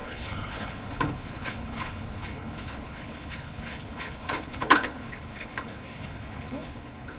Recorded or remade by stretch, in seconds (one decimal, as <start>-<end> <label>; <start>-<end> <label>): 0.0-7.2 remade